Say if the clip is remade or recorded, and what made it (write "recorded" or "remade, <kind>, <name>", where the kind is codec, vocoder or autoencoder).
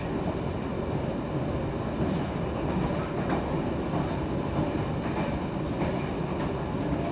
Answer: recorded